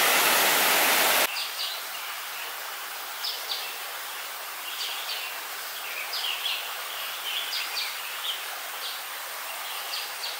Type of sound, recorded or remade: recorded